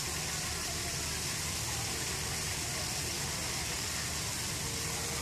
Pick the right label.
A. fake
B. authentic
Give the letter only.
B